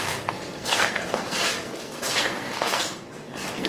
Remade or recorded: remade